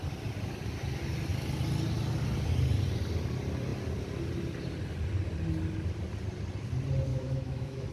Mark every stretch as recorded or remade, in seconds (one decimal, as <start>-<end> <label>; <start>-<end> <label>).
0.0-7.1 recorded; 7.1-7.9 remade